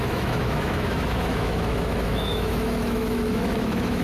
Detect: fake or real fake